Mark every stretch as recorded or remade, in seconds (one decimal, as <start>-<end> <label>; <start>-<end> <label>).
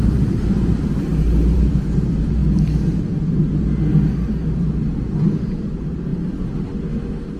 0.0-2.4 remade; 2.4-5.2 recorded; 5.2-6.1 remade; 6.1-7.4 recorded